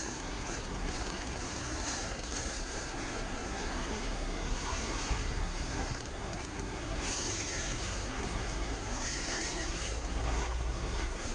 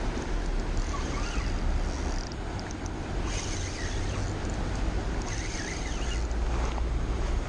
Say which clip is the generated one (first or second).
first